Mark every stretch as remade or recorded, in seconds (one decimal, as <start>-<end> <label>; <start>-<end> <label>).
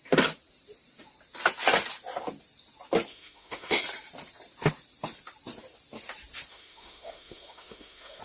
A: 0.0-3.1 recorded; 3.1-3.8 remade; 3.8-6.5 recorded; 6.5-8.2 remade